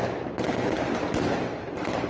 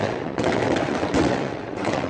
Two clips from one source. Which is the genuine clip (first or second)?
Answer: first